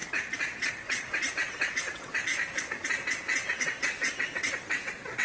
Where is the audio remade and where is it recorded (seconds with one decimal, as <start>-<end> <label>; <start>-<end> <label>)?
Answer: 0.0-0.7 recorded; 0.7-2.1 remade; 2.1-3.5 recorded; 3.5-5.2 remade